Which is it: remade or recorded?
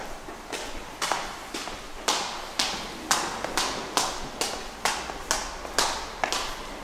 recorded